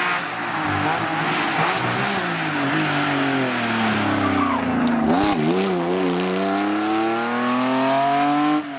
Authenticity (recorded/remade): recorded